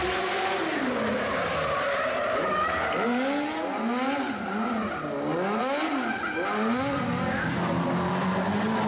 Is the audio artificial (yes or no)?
no